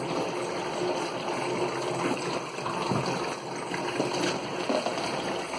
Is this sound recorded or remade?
recorded